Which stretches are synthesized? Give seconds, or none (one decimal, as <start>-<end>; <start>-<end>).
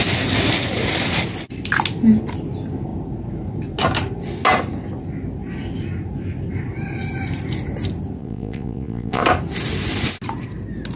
8.2-9.2